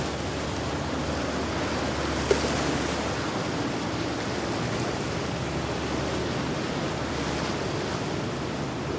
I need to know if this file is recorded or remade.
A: recorded